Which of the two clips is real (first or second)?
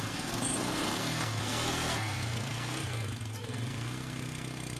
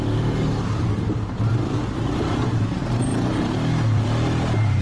second